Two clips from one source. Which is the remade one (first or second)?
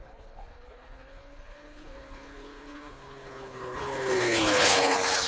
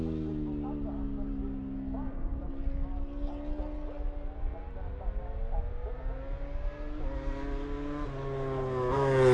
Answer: first